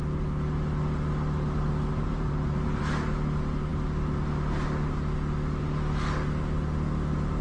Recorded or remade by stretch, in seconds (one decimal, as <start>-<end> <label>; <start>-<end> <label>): 0.0-1.9 recorded; 1.9-2.8 remade; 2.8-7.4 recorded